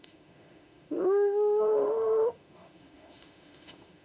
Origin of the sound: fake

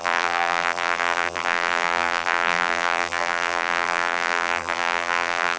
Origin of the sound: fake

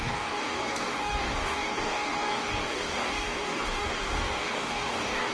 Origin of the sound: fake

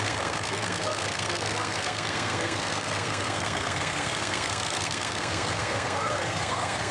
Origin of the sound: fake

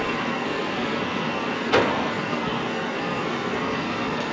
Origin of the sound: fake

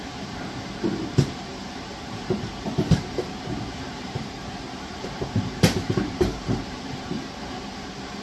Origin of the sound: fake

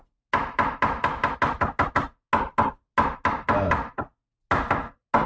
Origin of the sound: real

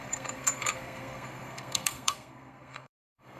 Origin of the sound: fake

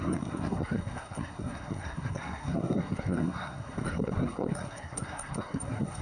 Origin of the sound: fake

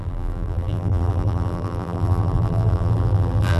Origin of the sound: fake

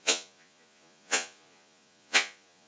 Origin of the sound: fake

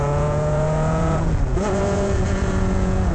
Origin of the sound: fake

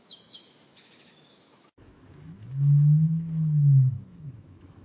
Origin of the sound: fake